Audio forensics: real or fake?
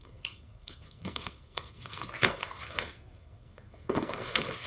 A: fake